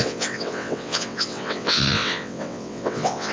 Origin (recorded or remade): remade